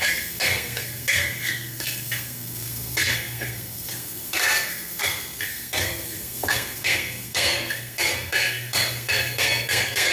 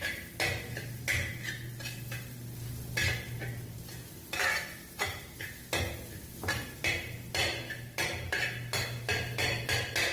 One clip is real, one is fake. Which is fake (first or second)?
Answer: first